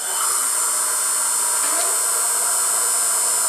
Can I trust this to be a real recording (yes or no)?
yes